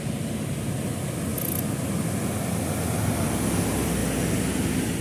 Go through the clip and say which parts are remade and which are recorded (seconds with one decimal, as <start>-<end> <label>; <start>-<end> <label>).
0.0-5.0 recorded